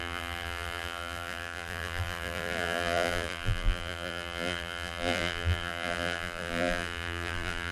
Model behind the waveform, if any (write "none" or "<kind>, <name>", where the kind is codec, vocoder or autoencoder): vocoder, BigVGAN v2